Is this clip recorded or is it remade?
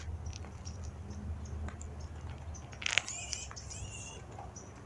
recorded